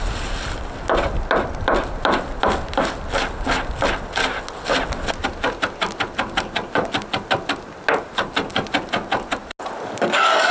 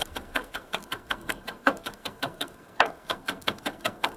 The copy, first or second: second